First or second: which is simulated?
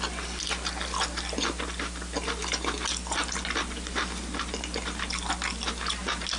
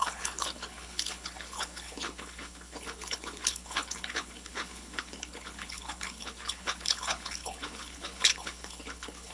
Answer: second